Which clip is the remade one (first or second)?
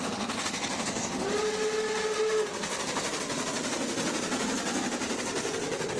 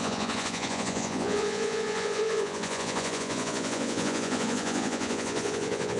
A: second